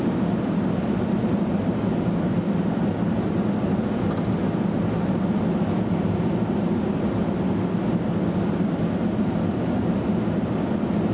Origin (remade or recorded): recorded